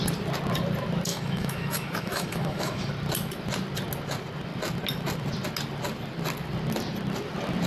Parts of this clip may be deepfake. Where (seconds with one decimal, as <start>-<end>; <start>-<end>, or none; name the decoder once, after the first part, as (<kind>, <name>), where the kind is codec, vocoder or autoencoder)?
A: 1.1-2.9 (autoencoder, DAC-VAE)